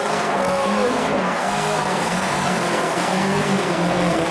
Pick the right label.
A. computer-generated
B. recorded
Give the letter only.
A